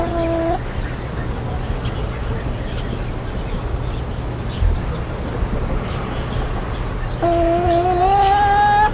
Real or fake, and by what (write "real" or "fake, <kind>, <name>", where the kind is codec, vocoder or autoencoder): real